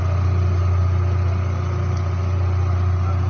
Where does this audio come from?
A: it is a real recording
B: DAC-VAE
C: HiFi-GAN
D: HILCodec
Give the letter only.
A